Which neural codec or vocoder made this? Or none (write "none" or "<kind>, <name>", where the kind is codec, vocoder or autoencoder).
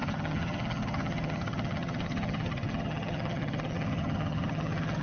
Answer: vocoder, HiFi-GAN